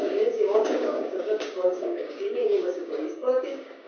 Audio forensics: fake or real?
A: fake